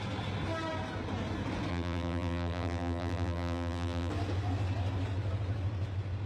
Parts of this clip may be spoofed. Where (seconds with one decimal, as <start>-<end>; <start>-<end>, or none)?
1.7-4.1